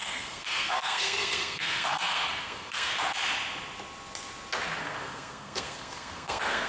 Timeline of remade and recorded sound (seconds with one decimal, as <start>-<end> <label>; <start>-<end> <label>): 0.0-2.9 remade; 2.9-4.8 recorded; 4.8-6.7 remade